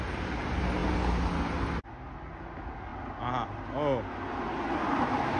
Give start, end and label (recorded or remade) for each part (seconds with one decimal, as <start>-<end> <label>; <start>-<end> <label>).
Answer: 0.0-5.4 recorded